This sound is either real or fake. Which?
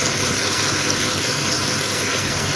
fake